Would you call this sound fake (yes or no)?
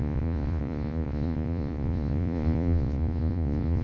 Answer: yes